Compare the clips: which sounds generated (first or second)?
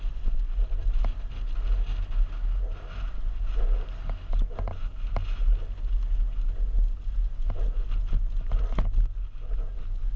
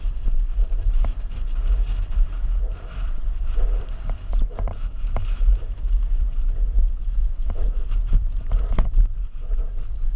second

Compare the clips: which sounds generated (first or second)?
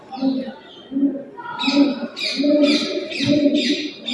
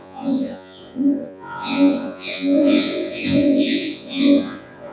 second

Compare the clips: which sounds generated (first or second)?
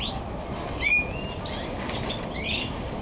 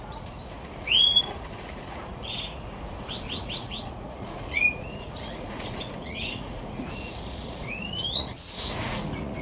second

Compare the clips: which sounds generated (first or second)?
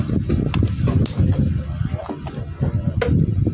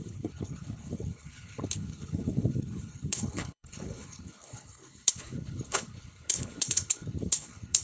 second